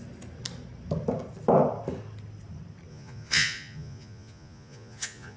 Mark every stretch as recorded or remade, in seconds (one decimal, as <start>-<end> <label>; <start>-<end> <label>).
0.0-2.9 recorded; 2.9-5.4 remade